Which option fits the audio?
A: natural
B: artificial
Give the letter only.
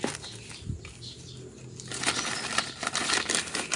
A